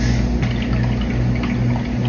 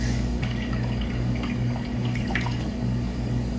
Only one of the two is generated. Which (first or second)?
second